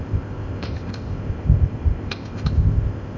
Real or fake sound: fake